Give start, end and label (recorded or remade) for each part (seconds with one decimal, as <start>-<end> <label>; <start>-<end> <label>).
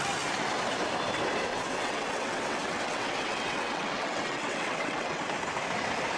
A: 0.0-1.5 recorded; 1.5-5.2 remade; 5.2-6.2 recorded